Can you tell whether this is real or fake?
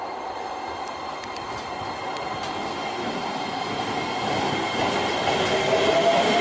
real